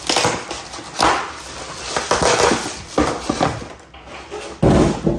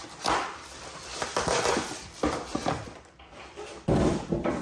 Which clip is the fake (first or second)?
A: second